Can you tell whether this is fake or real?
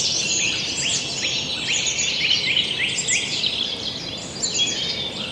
real